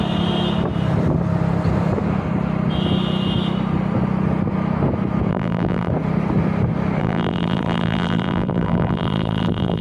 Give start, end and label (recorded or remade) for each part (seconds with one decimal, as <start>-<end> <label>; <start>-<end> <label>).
0.0-5.3 recorded; 5.3-5.9 remade; 5.9-7.0 recorded; 7.0-9.8 remade